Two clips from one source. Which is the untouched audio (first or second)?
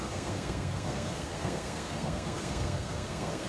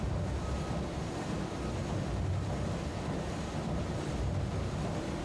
second